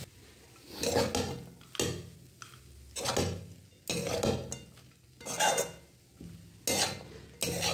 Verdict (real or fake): real